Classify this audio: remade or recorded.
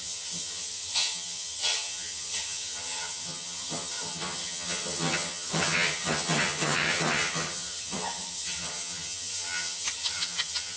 remade